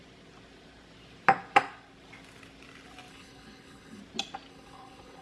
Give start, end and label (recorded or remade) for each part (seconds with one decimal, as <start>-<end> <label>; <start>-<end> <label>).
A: 0.0-3.1 recorded; 3.1-4.0 remade; 4.0-4.5 recorded; 4.5-5.2 remade